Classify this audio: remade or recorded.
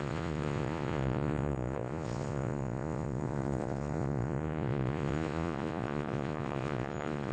remade